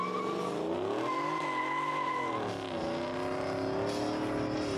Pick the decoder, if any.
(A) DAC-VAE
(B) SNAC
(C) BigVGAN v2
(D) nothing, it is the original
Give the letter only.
D